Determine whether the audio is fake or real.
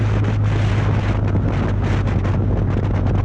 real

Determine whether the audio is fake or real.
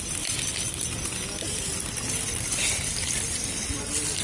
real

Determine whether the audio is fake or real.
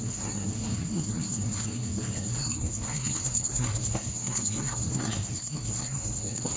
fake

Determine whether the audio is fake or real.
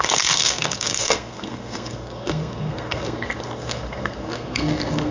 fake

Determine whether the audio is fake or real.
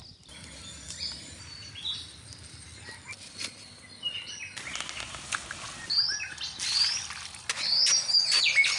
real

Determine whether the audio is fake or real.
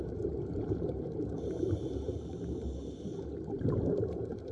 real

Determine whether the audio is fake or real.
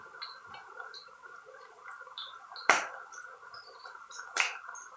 real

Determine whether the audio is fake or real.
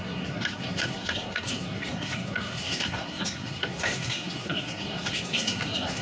fake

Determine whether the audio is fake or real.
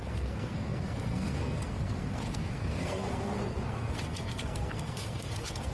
fake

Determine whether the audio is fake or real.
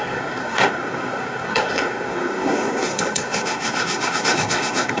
fake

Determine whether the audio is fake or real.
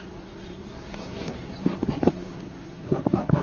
fake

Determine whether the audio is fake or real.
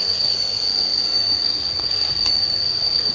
fake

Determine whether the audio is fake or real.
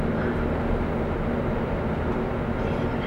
real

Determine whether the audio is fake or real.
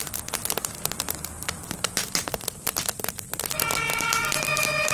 real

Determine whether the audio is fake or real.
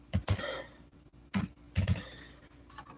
real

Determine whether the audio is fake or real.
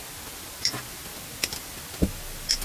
real